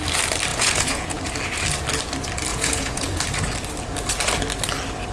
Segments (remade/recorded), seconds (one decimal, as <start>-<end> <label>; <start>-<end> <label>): 0.0-0.5 recorded; 0.5-1.2 remade; 1.2-2.5 recorded; 2.5-3.2 remade; 3.2-5.1 recorded